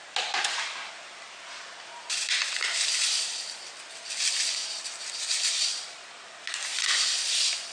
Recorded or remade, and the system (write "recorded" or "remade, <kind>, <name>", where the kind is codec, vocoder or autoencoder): recorded